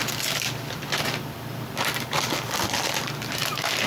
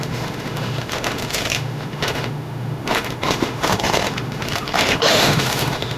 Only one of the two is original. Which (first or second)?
first